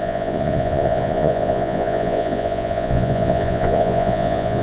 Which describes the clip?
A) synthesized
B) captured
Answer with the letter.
A